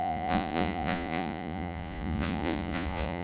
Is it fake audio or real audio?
fake